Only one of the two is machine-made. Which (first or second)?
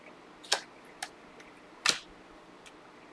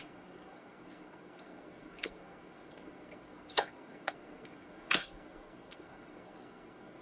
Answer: second